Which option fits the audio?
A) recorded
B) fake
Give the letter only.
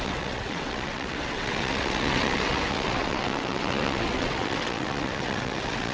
B